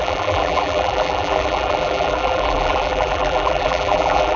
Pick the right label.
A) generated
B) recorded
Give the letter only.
A